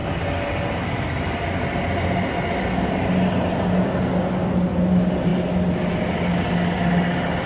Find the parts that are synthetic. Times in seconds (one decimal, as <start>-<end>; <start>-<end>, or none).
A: none

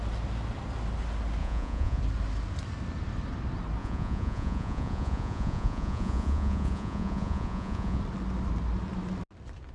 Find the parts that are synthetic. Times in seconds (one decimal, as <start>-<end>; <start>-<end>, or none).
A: 1.4-2.0; 3.8-8.0

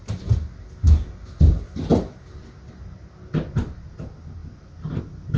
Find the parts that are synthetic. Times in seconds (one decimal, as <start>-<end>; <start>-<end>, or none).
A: none